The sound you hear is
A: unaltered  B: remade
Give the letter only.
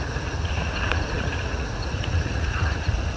B